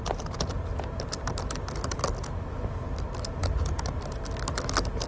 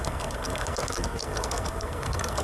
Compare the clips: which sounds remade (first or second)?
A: second